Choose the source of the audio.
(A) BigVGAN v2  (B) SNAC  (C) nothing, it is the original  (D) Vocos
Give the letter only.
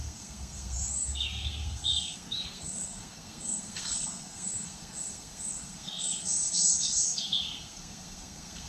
B